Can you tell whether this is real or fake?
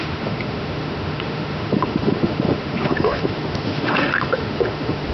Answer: fake